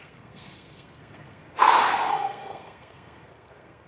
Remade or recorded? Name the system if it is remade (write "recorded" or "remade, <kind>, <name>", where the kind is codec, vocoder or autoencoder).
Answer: remade, codec, SNAC